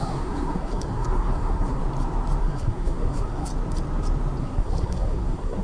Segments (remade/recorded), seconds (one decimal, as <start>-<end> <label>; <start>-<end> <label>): 0.0-1.8 remade; 1.8-2.4 recorded; 2.4-3.5 remade; 3.5-4.4 recorded; 4.4-5.6 remade